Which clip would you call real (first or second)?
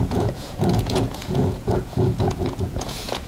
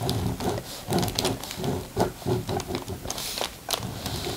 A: second